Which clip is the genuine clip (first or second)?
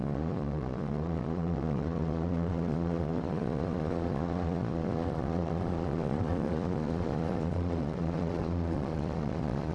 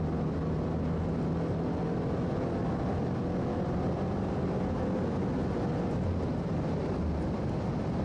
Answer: second